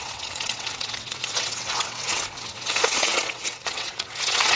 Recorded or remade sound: remade